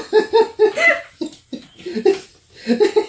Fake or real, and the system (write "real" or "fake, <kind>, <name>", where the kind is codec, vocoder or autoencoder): real